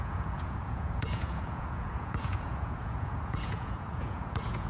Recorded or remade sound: remade